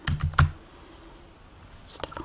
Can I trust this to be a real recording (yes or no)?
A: yes